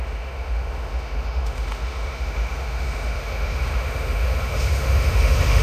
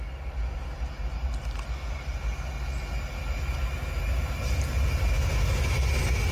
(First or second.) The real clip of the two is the second